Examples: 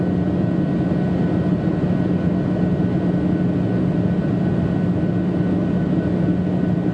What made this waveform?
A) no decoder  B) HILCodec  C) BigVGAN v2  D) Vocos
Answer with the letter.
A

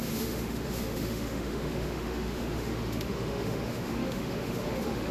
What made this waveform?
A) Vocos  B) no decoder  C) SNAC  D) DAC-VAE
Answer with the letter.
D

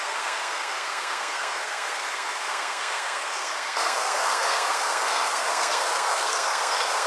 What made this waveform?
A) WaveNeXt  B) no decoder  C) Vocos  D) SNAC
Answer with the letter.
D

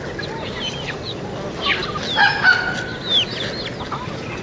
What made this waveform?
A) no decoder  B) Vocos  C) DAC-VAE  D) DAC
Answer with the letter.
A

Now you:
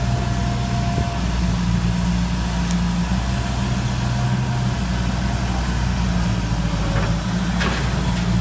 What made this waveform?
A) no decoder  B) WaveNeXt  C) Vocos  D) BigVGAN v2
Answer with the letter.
A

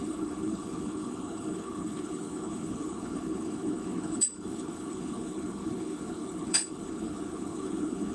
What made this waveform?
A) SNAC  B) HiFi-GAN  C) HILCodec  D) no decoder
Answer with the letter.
C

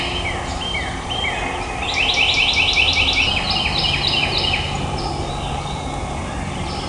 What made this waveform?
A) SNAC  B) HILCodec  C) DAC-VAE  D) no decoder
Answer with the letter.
D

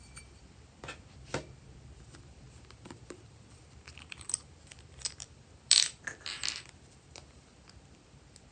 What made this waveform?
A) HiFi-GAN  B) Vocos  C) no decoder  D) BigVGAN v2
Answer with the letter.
D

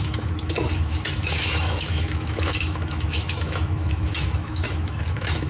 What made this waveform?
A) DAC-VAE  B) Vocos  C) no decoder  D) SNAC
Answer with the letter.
A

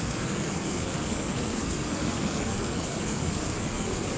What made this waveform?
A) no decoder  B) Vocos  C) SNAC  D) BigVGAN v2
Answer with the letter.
C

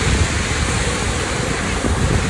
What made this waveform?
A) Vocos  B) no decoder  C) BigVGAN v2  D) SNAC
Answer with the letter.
B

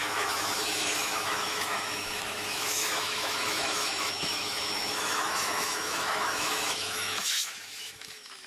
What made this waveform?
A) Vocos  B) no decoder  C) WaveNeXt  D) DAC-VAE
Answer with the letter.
D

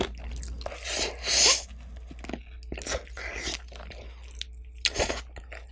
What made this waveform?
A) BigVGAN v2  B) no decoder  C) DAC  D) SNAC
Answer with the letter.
B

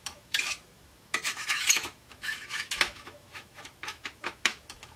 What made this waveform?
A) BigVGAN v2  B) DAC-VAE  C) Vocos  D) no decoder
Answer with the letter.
B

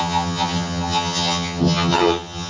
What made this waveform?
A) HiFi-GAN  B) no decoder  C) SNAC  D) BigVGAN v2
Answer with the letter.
A